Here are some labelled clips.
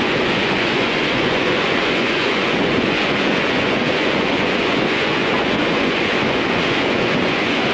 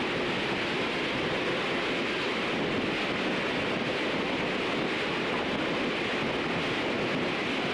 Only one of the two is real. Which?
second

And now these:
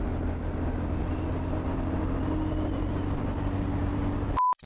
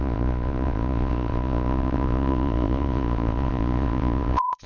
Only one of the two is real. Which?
first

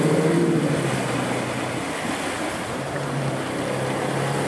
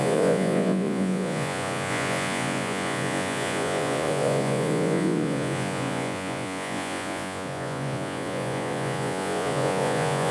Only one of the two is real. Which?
first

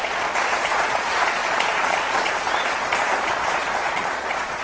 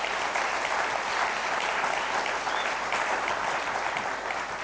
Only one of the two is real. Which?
second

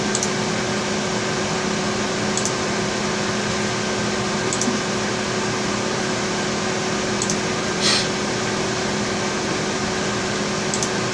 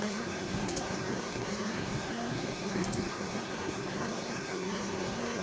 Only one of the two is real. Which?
first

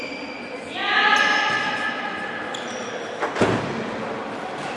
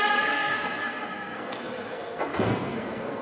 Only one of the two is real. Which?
first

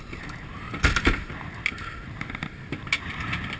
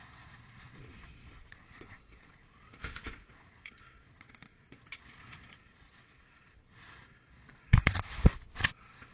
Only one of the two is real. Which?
first